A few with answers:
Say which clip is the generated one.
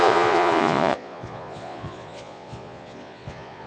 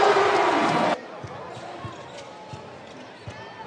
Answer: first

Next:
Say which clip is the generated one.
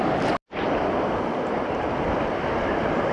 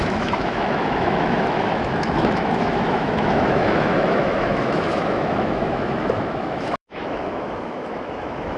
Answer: second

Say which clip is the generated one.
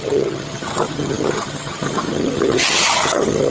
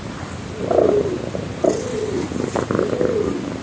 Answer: first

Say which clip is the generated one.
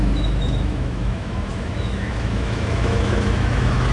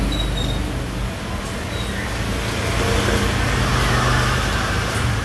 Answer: first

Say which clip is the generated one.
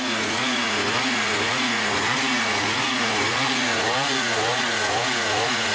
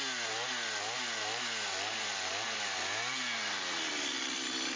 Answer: first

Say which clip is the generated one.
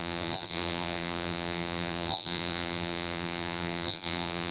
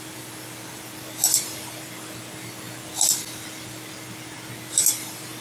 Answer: first